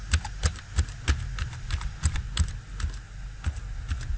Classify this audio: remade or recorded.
recorded